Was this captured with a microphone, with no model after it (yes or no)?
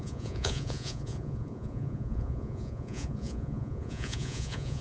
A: no